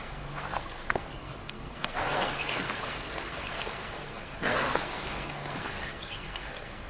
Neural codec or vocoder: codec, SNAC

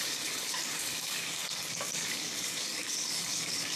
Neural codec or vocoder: codec, DAC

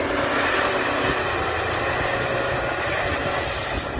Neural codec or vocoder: none